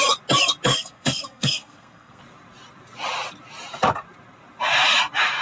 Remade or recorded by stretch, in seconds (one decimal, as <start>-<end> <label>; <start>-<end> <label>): 0.0-0.7 recorded; 0.7-2.2 remade; 2.2-5.4 recorded